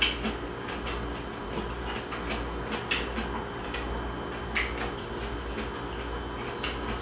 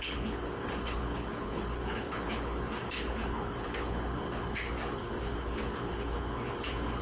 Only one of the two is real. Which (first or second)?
first